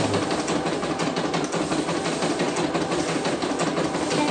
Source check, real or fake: real